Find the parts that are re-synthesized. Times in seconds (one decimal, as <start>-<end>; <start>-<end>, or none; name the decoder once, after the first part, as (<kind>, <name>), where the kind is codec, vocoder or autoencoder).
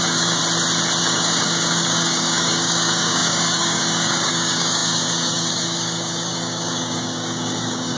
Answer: 0.0-0.4 (codec, DAC); 1.0-8.0